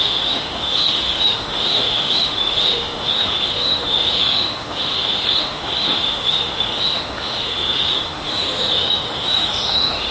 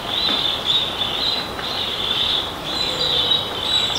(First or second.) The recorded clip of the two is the second